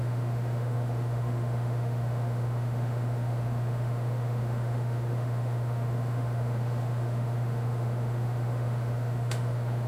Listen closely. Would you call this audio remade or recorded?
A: remade